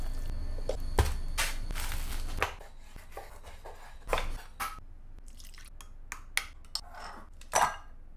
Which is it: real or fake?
real